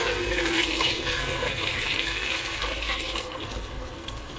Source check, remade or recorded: remade